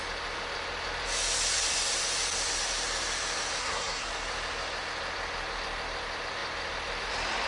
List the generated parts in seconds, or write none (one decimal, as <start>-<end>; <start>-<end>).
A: 3.6-4.1